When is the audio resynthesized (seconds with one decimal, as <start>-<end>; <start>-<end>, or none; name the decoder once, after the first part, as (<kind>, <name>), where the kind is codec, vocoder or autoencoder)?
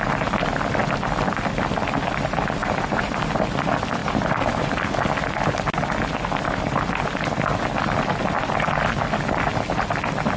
2.6-3.3 (vocoder, BigVGAN v2); 4.0-4.8